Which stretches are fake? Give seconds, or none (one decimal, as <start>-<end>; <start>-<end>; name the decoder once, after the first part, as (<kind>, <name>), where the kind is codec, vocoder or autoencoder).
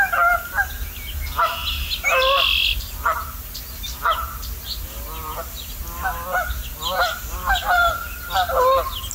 5.2-5.8 (vocoder, BigVGAN v2); 7.1-7.9